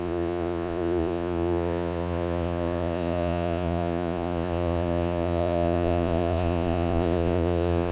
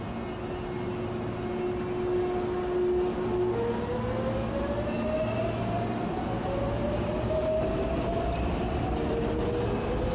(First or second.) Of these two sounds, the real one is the second